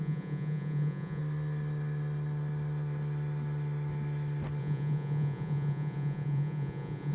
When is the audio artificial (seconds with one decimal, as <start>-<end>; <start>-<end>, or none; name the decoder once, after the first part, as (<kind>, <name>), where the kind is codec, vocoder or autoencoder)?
0.0-1.2 (vocoder, Vocos); 4.6-7.1